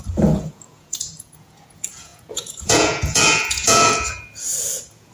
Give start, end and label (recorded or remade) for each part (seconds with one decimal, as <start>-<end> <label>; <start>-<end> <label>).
0.0-5.1 remade